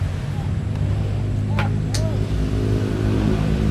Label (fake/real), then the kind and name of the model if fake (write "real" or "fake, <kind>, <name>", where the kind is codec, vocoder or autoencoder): real